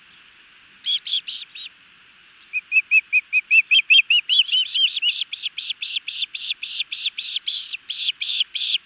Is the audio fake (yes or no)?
no